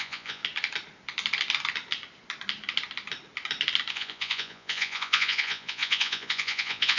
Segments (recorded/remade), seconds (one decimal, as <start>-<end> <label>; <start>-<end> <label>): 0.0-0.4 remade; 0.4-3.9 recorded; 3.9-7.0 remade